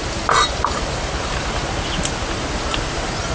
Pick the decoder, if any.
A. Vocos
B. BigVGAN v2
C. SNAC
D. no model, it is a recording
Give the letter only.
D